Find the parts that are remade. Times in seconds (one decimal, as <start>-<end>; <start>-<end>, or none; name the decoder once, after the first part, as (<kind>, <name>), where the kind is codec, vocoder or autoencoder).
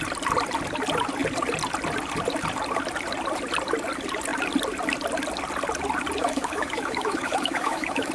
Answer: 6.2-8.1 (autoencoder, DAC-VAE)